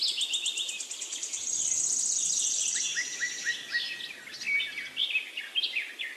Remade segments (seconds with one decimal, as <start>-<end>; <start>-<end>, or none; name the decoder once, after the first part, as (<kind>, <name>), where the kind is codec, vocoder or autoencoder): none